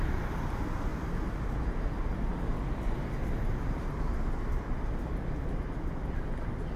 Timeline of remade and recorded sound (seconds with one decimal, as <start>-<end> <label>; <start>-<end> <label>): 0.0-6.8 recorded